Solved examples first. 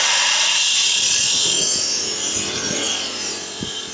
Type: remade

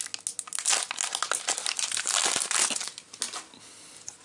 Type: recorded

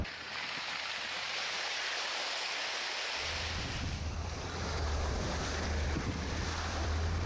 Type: remade